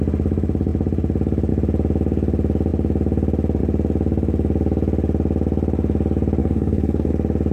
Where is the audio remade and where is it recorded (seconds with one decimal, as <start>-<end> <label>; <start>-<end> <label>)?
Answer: 0.0-6.4 recorded; 6.4-7.1 remade; 7.1-7.5 recorded

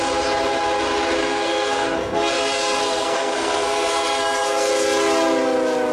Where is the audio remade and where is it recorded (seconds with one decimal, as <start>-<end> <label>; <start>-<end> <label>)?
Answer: 0.0-1.2 recorded; 1.2-4.7 remade; 4.7-5.9 recorded

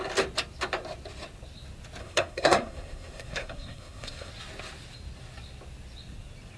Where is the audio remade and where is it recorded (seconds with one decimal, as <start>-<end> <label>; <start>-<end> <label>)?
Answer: 0.0-2.0 recorded; 2.0-4.3 remade; 4.3-6.6 recorded

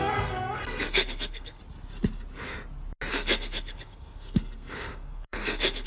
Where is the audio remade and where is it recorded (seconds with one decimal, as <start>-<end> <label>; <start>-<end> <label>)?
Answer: 0.0-1.6 remade; 1.6-3.1 recorded; 3.1-5.9 remade